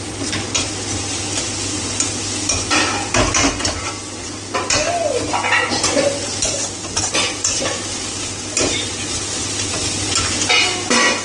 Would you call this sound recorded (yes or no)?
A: yes